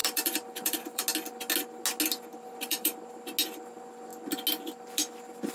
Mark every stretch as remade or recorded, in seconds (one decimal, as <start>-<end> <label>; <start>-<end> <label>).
0.0-1.0 remade; 1.0-2.3 recorded; 2.3-2.9 remade; 2.9-5.5 recorded